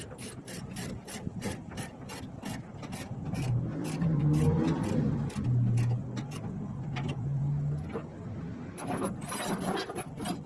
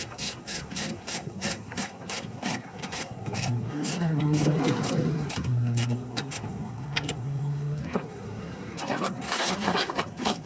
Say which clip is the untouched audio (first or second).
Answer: first